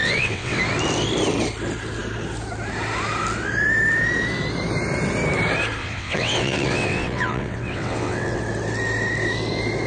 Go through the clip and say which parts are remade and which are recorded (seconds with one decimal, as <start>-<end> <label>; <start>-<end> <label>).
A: 0.0-0.6 remade; 0.6-5.8 recorded; 5.8-8.4 remade; 8.4-9.9 recorded